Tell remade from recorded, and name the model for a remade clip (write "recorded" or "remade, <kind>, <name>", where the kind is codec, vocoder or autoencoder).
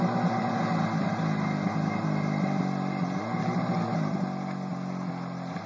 recorded